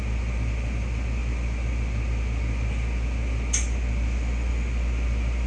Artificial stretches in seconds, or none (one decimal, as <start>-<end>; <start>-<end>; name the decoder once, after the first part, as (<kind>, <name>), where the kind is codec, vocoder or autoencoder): none